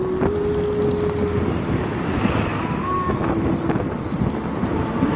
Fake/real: real